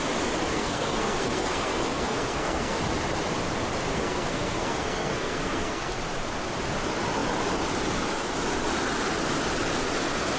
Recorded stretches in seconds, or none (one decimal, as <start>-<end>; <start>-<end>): 0.0-0.5; 2.8-3.9; 6.0-10.4